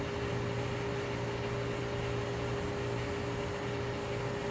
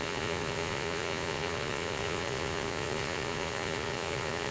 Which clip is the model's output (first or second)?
second